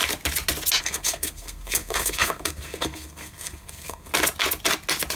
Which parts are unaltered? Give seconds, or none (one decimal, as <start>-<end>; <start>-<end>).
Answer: 0.0-0.8; 4.1-5.2